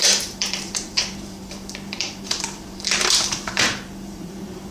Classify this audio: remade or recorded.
remade